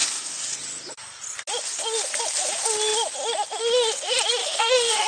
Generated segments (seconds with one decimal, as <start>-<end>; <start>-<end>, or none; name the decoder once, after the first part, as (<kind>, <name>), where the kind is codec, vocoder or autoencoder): 0.0-0.6 (codec, SNAC); 4.4-5.1